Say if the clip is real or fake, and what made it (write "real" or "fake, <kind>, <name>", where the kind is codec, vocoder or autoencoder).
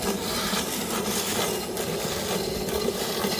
real